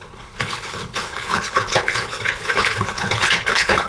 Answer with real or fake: fake